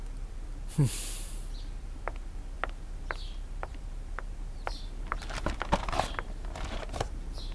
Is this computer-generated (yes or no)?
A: yes